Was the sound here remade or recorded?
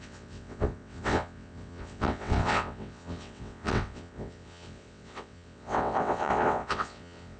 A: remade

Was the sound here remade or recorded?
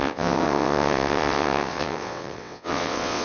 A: remade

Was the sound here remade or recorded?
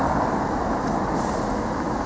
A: recorded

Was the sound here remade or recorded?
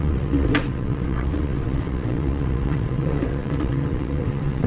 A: remade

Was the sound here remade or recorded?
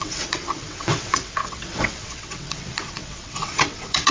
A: remade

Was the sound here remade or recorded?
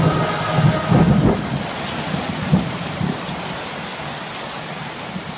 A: recorded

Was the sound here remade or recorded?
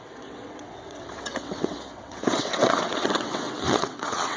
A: remade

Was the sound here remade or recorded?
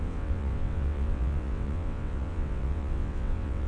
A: remade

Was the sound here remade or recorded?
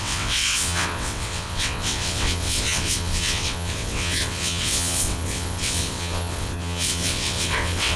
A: remade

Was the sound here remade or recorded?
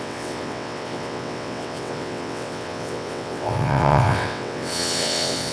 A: remade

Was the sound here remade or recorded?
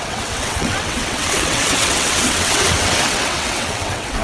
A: remade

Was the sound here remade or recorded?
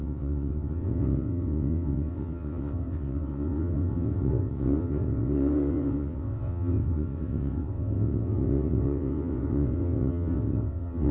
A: remade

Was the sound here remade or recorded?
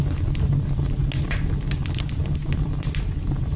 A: recorded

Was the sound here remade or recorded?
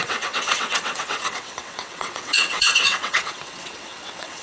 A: remade